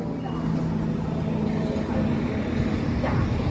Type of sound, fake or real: real